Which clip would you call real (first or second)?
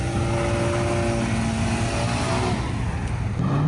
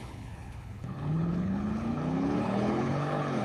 first